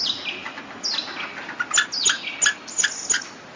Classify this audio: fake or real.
real